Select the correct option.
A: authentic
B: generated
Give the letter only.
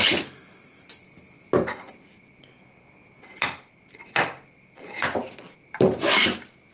A